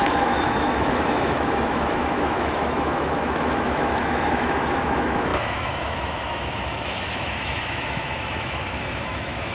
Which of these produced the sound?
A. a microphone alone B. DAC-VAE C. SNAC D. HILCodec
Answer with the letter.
B